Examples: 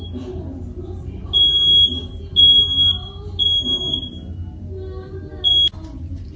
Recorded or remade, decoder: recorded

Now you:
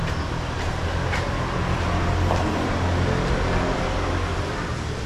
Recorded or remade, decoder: recorded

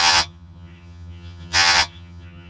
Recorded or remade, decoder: remade, vocoder, HiFi-GAN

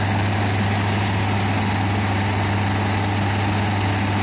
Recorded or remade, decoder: recorded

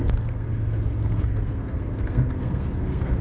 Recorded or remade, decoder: remade, codec, SNAC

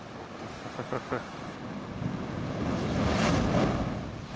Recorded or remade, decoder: recorded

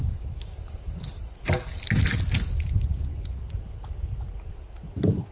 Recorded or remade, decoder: recorded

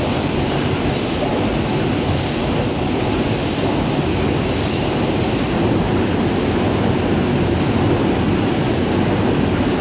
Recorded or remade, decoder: remade, vocoder, BigVGAN v2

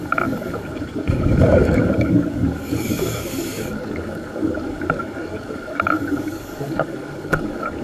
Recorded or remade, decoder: remade, codec, DAC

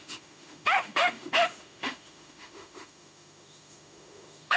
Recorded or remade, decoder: remade, autoencoder, DAC-VAE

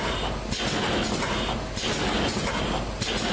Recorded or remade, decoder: recorded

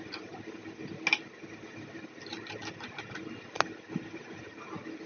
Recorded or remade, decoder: recorded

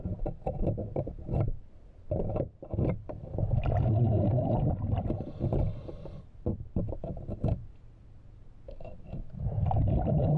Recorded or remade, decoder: recorded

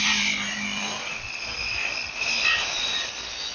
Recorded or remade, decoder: recorded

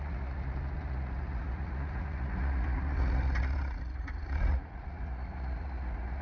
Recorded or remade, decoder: remade, vocoder, Vocos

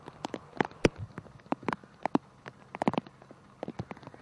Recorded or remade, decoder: recorded